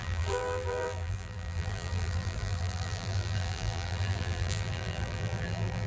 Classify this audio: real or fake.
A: fake